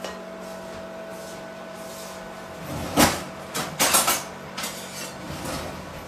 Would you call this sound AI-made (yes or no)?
no